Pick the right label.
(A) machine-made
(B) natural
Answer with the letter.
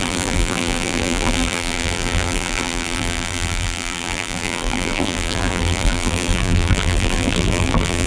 A